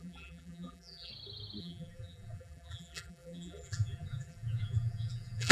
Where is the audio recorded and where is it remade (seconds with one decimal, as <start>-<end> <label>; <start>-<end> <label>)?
0.0-1.1 remade; 1.1-1.6 recorded; 1.6-5.5 remade